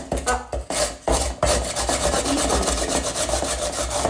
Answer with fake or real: real